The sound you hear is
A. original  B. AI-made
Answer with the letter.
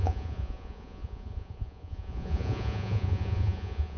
B